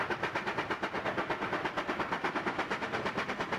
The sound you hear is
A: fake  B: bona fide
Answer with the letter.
B